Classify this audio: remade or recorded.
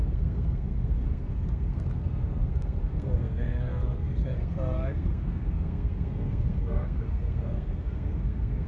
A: remade